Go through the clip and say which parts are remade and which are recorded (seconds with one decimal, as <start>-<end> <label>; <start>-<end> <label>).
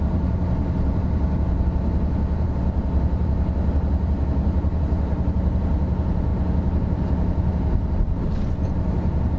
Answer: 0.0-9.4 recorded